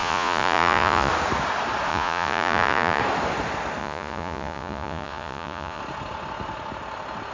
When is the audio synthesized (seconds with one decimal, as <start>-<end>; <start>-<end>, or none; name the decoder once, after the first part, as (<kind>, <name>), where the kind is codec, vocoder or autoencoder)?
0.0-1.1 (vocoder, Vocos); 1.9-3.0; 3.8-5.8